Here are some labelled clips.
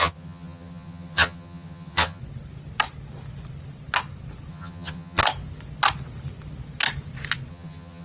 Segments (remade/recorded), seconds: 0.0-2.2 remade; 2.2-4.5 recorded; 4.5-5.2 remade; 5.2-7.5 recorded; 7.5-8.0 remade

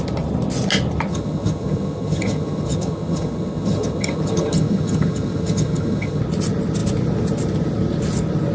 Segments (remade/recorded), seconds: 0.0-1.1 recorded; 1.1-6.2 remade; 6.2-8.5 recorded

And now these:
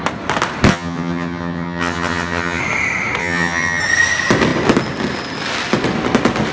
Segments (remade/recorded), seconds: 0.0-0.7 recorded; 0.7-2.6 remade; 2.6-3.2 recorded; 3.2-3.8 remade; 3.8-6.5 recorded

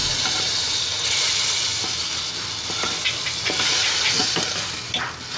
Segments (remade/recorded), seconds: 0.0-5.4 recorded

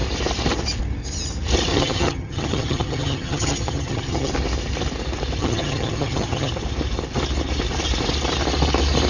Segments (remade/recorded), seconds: 0.0-1.7 recorded; 1.7-4.3 remade; 4.3-5.4 recorded; 5.4-6.5 remade; 6.5-9.1 recorded